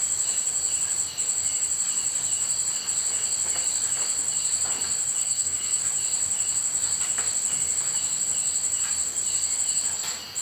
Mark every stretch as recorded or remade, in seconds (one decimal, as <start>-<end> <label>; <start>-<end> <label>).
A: 0.0-5.2 recorded; 5.2-5.8 remade; 5.8-10.4 recorded